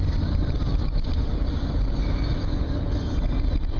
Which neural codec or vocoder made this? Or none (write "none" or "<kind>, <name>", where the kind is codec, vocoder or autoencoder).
none